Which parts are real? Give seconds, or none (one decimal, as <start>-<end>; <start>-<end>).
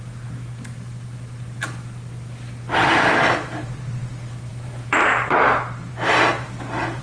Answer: 0.0-4.5; 5.9-7.0